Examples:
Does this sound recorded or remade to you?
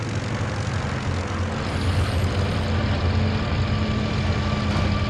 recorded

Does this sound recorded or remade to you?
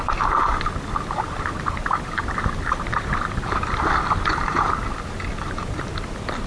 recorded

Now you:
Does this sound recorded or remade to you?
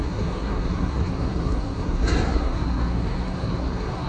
remade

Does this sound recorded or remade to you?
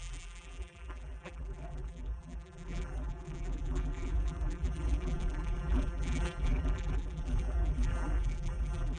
remade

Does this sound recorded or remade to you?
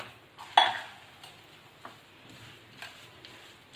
recorded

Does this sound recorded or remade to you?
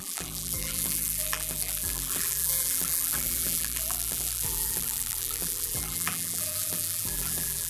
remade